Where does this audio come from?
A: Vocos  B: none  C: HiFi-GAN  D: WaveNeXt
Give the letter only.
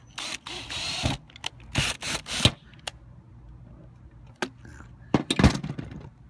B